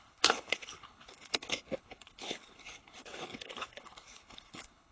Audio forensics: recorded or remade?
remade